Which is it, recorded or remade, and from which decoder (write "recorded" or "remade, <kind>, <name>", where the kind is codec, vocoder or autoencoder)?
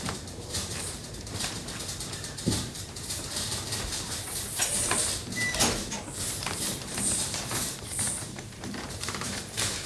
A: remade, vocoder, BigVGAN v2